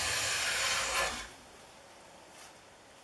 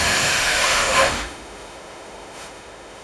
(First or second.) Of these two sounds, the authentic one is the first